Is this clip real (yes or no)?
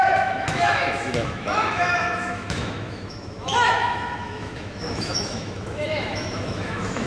no